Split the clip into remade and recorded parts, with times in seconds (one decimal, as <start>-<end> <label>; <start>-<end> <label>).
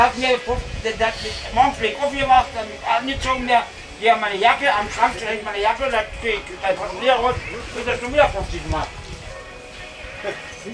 0.0-0.6 recorded; 0.6-2.4 remade; 2.4-10.7 recorded